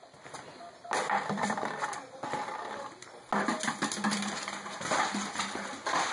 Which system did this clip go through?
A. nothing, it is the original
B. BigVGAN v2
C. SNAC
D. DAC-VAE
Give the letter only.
A